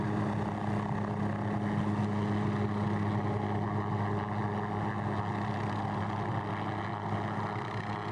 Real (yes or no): yes